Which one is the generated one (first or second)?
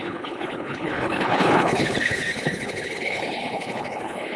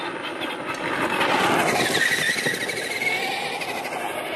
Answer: first